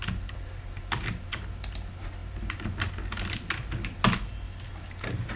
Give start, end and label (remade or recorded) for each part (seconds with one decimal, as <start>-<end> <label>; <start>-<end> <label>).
0.0-5.4 recorded